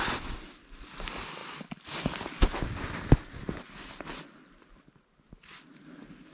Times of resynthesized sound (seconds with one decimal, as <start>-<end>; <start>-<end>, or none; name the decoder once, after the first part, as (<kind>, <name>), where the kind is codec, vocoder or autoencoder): none